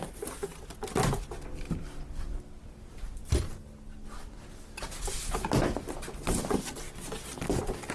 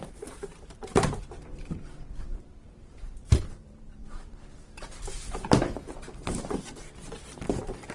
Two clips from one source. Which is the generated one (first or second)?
second